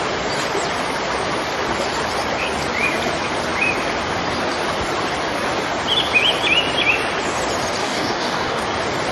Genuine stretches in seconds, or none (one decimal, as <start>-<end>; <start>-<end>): 0.0-7.8; 8.6-9.1